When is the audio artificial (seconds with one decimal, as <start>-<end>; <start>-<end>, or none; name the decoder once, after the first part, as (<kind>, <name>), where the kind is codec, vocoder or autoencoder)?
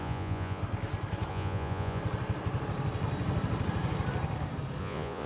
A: 0.0-0.6 (vocoder, Vocos); 1.3-2.0; 4.8-5.3